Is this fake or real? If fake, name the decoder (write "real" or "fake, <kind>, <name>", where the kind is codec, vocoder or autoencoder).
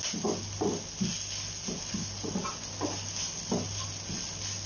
real